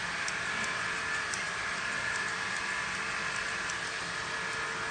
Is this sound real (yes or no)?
yes